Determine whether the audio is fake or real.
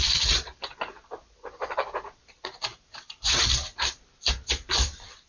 fake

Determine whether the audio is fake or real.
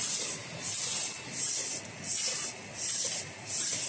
real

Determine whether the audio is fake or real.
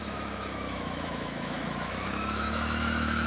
fake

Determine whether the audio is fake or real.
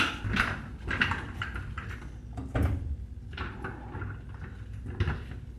real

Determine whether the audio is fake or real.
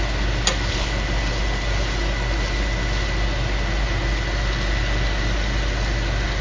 real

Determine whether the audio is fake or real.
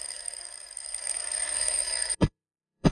fake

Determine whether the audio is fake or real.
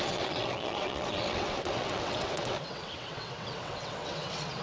fake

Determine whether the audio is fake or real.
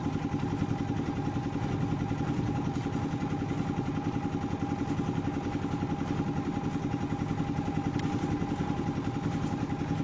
real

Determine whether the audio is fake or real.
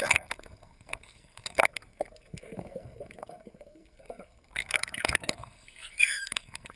fake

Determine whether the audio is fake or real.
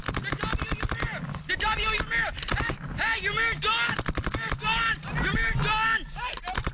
real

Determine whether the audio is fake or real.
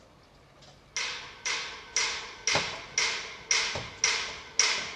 real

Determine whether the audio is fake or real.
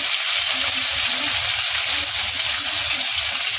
real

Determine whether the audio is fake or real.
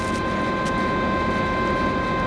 real